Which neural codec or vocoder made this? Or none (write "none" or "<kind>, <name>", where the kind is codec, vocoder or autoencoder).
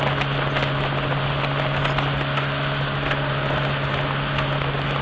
none